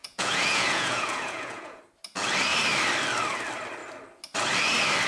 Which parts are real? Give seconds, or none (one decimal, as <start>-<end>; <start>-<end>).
1.8-5.1